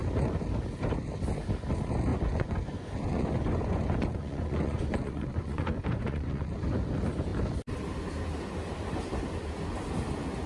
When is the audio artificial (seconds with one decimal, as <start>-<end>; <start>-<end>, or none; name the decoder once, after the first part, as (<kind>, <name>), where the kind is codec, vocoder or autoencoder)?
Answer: 2.1-6.5 (vocoder, Vocos)